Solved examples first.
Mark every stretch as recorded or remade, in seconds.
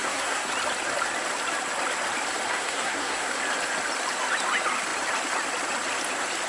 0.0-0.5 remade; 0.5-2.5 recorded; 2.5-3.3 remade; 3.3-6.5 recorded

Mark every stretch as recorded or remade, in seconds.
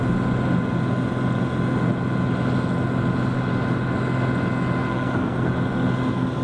0.0-4.9 recorded; 4.9-5.5 remade; 5.5-6.4 recorded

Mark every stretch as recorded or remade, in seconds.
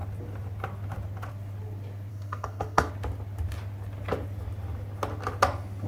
0.0-2.1 recorded; 2.1-2.9 remade; 2.9-5.9 recorded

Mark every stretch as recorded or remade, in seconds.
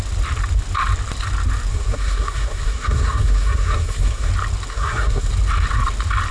0.0-1.7 recorded; 1.7-4.3 remade; 4.3-4.7 recorded; 4.7-5.3 remade; 5.3-6.3 recorded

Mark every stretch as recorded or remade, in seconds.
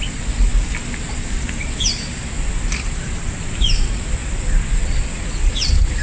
0.0-6.0 recorded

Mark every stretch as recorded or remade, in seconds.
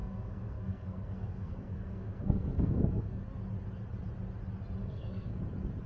0.0-3.2 remade; 3.2-4.8 recorded; 4.8-5.4 remade; 5.4-5.9 recorded